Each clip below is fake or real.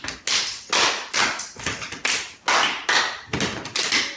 real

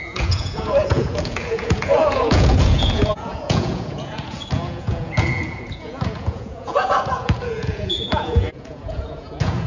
fake